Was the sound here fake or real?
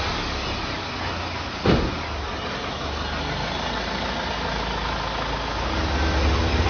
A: real